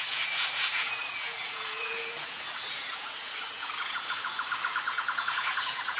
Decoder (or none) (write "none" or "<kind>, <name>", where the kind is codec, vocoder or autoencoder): vocoder, Vocos